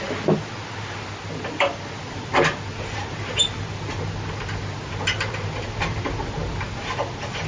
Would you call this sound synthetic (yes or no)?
no